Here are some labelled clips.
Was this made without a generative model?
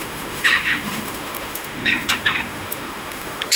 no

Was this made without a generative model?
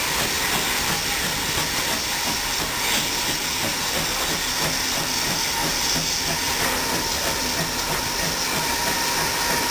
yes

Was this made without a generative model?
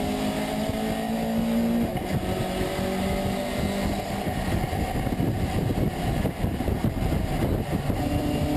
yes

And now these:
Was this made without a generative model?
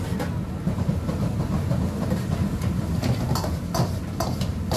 yes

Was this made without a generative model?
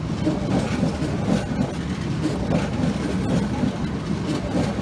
yes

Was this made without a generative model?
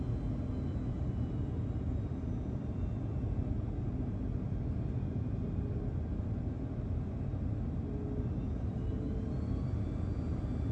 yes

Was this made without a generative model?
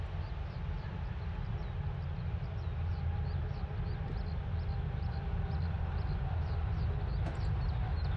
yes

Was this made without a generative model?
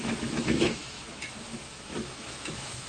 no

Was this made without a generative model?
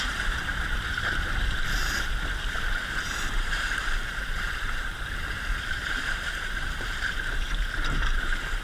no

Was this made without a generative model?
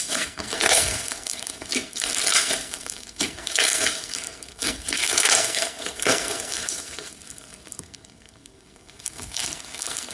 no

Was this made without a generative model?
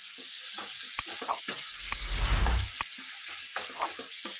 yes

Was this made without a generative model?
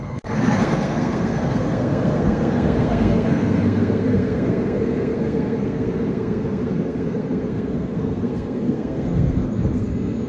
no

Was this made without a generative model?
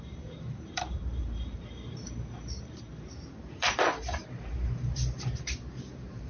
no